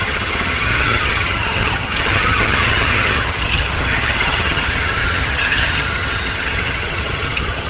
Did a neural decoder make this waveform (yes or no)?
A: yes